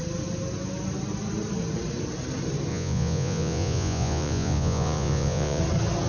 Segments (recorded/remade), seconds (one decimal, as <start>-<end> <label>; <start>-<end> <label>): 0.0-2.7 recorded; 2.7-5.6 remade; 5.6-6.1 recorded